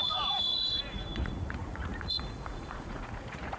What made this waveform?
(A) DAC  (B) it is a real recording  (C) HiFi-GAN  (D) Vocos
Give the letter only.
D